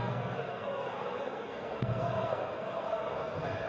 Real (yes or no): no